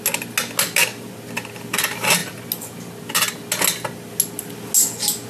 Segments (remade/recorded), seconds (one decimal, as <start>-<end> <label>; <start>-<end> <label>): 0.0-5.3 recorded